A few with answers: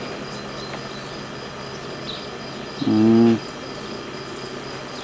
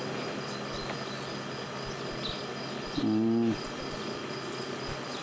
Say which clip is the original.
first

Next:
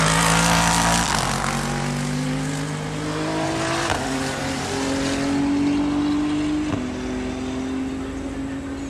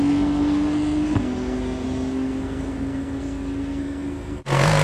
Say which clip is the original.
first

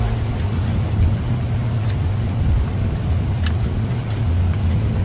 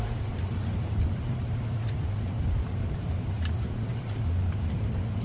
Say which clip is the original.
first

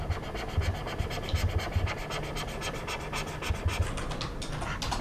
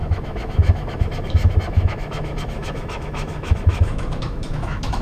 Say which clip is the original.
first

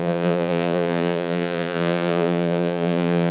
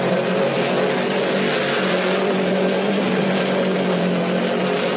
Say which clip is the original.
second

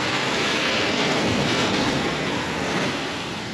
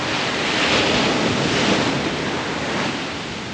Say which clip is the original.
second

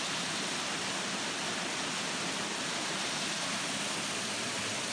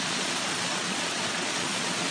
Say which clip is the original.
first